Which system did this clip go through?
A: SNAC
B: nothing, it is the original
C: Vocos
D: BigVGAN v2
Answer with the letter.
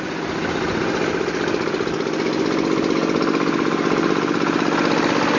B